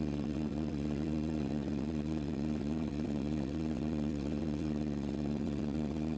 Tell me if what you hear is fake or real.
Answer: fake